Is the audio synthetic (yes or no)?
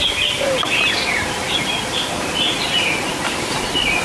no